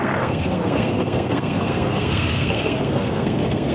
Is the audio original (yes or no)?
no